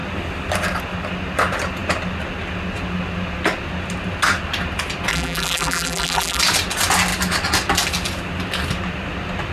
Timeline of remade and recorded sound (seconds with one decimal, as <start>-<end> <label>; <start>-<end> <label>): 0.0-5.1 recorded; 5.1-6.4 remade; 6.4-9.5 recorded